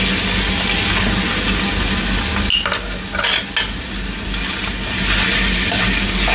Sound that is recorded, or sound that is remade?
recorded